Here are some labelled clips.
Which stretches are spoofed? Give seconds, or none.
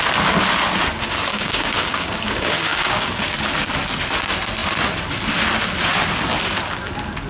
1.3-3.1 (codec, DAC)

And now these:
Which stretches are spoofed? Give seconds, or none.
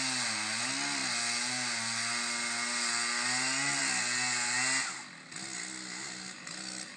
none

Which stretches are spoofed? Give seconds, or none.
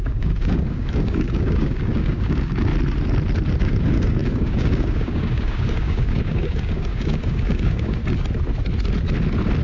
0.0-2.7 (codec, DAC); 3.6-8.0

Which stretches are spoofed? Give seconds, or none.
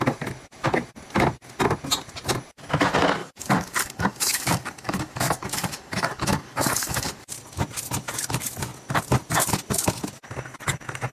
3.2-7.2 (codec, DAC)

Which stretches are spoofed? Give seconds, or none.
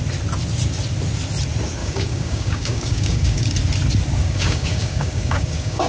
1.8-3.5 (codec, DAC); 4.2-5.9